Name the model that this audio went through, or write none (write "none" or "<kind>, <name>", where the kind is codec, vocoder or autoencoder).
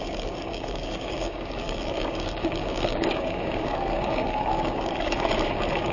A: codec, DAC